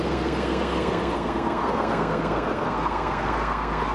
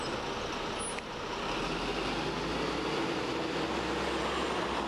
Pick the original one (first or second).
second